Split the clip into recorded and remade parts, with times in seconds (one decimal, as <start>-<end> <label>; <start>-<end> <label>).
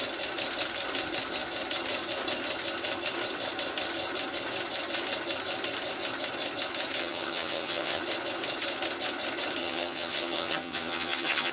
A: 0.0-7.0 recorded; 7.0-8.0 remade; 8.0-9.6 recorded; 9.6-11.5 remade